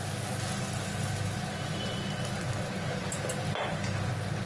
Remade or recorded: recorded